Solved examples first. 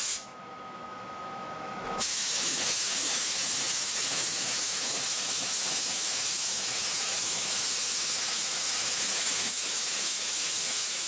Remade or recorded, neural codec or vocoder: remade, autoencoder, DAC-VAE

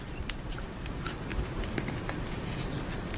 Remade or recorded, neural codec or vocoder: recorded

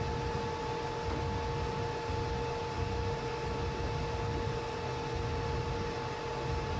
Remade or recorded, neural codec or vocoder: recorded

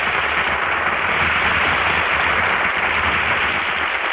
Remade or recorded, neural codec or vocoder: recorded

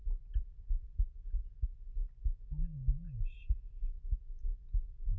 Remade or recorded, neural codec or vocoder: recorded